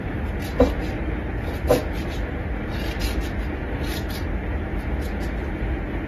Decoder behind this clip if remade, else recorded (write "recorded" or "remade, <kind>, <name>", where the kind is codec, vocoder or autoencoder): recorded